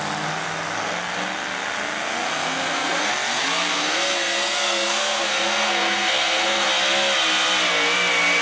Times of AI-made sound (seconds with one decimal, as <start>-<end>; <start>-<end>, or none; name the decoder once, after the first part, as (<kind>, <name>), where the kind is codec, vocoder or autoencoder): 2.3-3.1 (codec, SNAC); 3.6-6.7